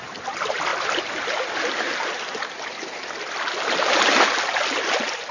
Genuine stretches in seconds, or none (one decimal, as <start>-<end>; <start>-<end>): 0.0-5.3